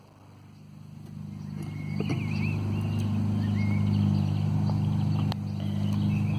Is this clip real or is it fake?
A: real